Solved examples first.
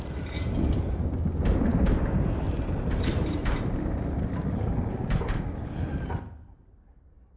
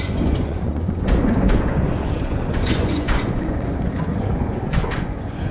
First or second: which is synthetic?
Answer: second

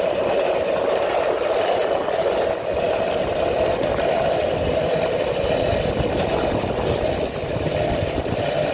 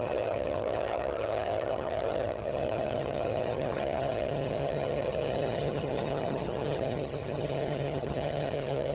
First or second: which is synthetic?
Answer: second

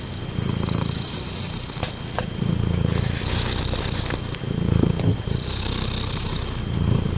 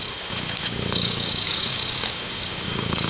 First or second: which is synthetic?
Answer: second